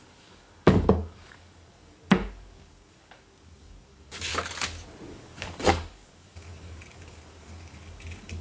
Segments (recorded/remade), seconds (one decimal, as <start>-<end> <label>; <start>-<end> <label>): 0.0-4.3 remade; 4.3-5.1 recorded; 5.1-8.4 remade